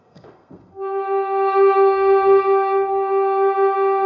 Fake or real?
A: fake